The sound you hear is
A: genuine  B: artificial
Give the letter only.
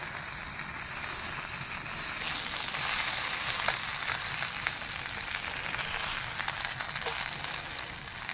A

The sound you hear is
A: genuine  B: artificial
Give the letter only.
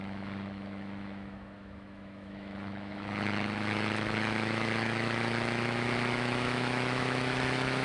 B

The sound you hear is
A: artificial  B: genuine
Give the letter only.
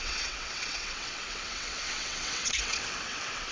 A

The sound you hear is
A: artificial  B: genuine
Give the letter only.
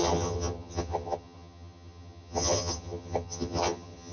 A